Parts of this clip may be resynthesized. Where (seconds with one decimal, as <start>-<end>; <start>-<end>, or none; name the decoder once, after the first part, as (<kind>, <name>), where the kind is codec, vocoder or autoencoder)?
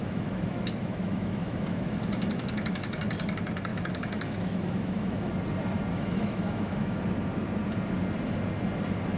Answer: 0.0-3.0 (autoencoder, DAC-VAE); 3.7-5.3; 5.9-7.0